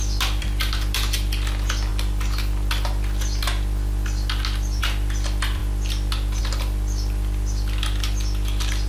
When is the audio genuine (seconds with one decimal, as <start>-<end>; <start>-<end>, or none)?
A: 1.9-4.8; 5.6-6.4